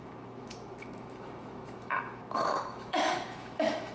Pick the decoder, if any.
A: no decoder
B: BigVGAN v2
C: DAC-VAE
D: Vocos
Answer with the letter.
C